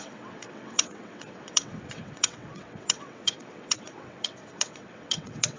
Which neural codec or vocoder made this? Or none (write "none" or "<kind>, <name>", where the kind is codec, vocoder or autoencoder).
vocoder, WaveNeXt